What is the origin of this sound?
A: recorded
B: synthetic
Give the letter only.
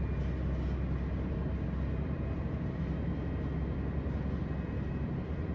A